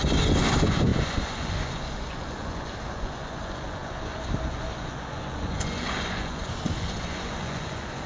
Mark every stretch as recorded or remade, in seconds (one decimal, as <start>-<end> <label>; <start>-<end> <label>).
0.0-8.1 remade